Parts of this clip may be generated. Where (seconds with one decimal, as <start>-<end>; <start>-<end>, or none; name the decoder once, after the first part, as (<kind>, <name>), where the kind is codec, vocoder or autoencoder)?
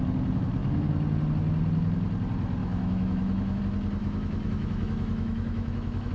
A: 2.6-3.6 (autoencoder, DAC-VAE); 4.0-6.1